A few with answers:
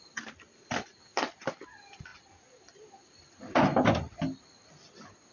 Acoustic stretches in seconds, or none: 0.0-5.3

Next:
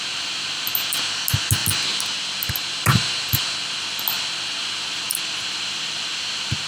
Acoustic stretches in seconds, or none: 0.0-6.7

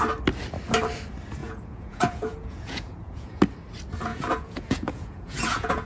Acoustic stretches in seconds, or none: 0.0-1.4; 3.4-4.1

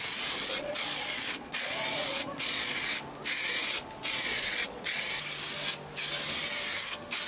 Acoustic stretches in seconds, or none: 0.0-0.4; 2.7-4.0; 5.0-7.3

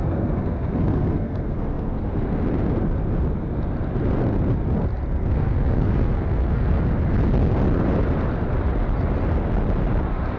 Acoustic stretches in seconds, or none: 2.2-5.3; 6.8-10.4

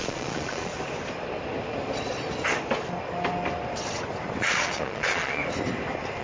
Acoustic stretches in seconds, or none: 0.7-4.4; 5.4-6.2

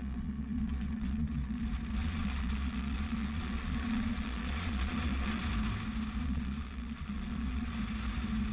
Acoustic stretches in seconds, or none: 1.6-2.0; 5.4-6.2; 7.7-8.5